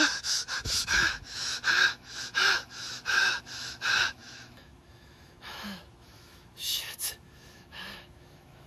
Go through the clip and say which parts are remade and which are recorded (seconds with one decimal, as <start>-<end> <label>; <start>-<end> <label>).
0.0-8.7 remade